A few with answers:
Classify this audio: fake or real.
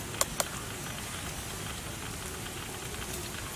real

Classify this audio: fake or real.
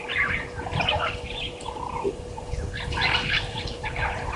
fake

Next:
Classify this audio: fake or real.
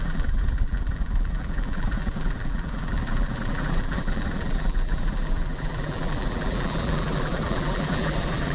fake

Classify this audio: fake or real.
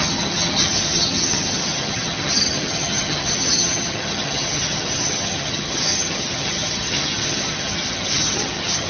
fake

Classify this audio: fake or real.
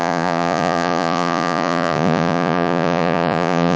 fake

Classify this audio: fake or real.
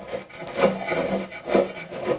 real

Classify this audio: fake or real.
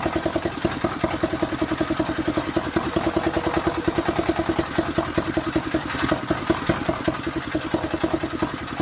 real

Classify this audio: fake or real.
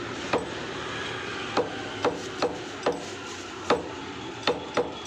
real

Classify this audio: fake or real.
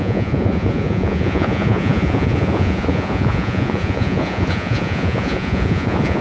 fake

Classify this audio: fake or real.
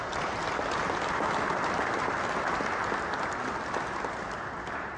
real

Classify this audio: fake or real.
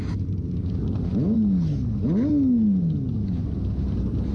real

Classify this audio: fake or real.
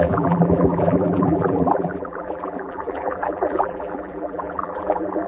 fake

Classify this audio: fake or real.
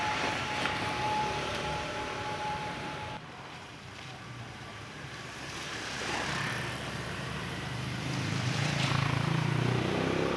fake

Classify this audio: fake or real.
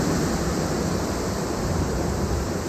real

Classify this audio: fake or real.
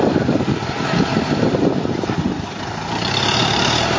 fake